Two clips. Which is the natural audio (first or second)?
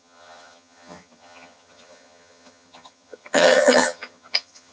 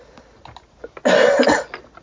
second